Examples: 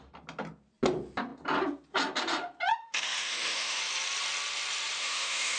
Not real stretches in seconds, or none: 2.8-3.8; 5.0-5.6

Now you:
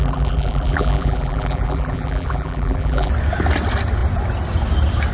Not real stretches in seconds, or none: 0.0-3.1